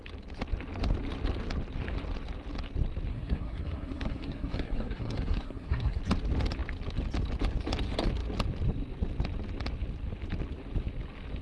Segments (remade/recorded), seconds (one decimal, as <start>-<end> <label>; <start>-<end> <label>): 0.0-3.1 recorded; 3.1-6.0 remade; 6.0-11.4 recorded